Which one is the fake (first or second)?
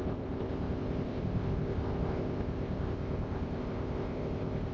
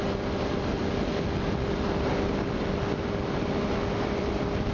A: first